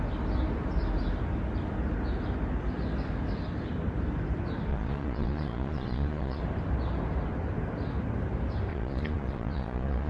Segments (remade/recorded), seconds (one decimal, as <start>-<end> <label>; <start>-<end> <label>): 0.0-4.7 recorded; 4.7-6.4 remade; 6.4-8.7 recorded; 8.7-10.1 remade